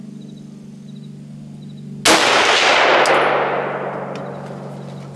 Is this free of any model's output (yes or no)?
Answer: yes